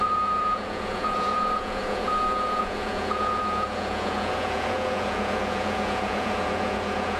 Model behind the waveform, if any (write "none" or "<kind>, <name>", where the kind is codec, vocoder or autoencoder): vocoder, Vocos